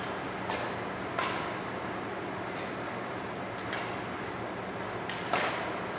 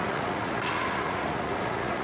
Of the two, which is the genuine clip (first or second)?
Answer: first